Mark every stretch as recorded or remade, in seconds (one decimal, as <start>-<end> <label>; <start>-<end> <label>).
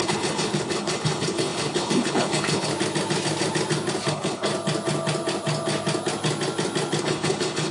0.0-2.7 remade; 2.7-4.1 recorded; 4.1-4.5 remade; 4.5-7.0 recorded; 7.0-7.7 remade